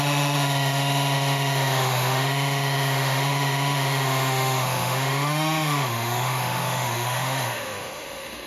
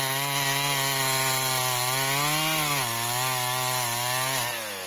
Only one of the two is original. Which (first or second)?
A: second